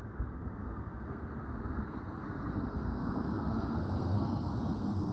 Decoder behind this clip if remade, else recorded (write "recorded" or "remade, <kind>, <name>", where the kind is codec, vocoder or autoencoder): remade, codec, SNAC